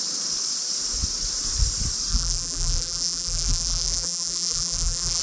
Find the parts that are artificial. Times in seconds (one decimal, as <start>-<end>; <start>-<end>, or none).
2.1-5.2

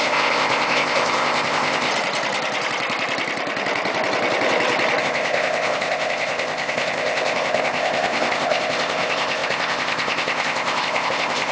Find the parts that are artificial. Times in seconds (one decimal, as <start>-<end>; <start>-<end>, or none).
0.0-1.9; 5.0-11.5

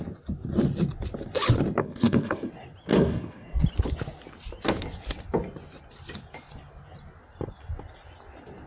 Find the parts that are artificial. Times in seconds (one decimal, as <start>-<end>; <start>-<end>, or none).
1.8-2.5; 2.9-3.6

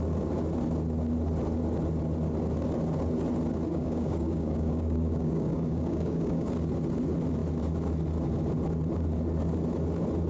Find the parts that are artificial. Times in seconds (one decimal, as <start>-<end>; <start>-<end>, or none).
3.7-6.5

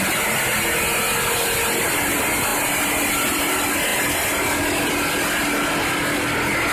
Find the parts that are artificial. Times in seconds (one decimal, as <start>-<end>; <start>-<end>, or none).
none

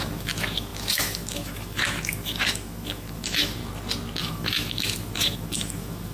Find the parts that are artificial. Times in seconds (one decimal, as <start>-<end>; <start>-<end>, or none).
0.0-3.6; 4.2-6.1

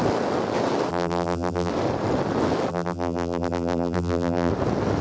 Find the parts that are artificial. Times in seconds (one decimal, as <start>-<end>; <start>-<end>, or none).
0.9-1.7; 2.7-4.5